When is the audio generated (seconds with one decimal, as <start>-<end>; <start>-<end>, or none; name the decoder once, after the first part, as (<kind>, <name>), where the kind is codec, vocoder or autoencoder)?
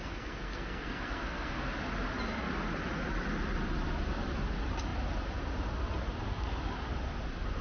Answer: 0.0-1.5 (codec, SNAC)